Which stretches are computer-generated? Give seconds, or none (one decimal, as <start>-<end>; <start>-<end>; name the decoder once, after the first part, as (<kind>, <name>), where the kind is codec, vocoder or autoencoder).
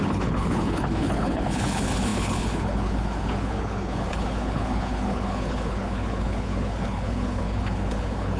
0.0-8.4 (codec, HILCodec)